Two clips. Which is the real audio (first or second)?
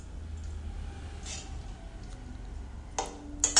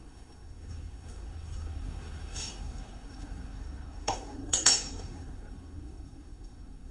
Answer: first